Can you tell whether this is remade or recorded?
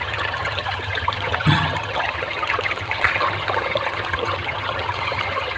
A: remade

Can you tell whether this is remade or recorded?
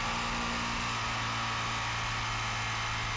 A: recorded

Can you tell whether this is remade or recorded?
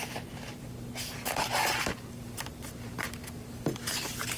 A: remade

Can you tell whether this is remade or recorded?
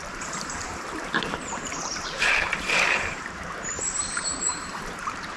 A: remade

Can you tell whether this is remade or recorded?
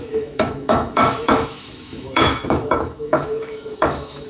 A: remade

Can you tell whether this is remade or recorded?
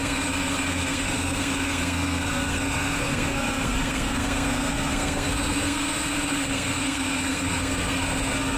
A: remade